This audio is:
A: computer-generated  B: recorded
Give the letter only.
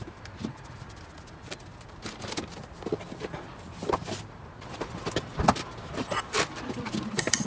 B